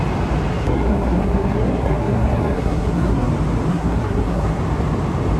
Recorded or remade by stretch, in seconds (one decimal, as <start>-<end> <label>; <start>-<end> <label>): 0.0-0.5 recorded; 0.5-3.3 remade; 3.3-3.7 recorded; 3.7-4.6 remade; 4.6-5.4 recorded